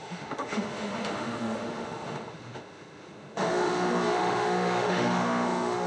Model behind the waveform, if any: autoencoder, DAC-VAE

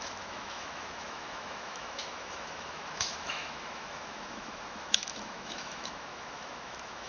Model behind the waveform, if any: autoencoder, DAC-VAE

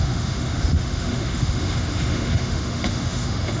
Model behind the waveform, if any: autoencoder, DAC-VAE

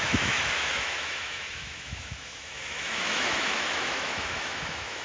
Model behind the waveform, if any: autoencoder, DAC-VAE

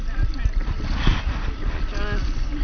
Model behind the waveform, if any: none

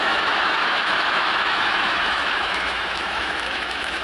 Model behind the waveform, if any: autoencoder, DAC-VAE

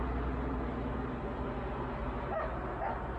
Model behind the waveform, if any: none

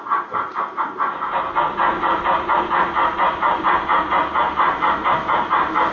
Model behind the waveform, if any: none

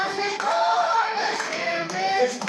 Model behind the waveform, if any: autoencoder, DAC-VAE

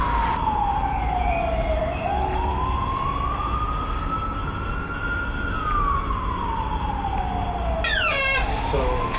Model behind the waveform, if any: none